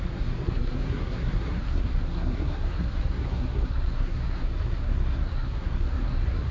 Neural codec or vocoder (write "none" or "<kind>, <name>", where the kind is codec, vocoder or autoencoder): codec, SNAC